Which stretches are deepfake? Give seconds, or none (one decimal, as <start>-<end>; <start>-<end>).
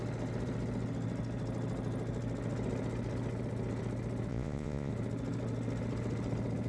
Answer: 4.3-4.9